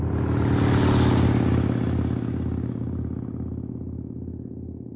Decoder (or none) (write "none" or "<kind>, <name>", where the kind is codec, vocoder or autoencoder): none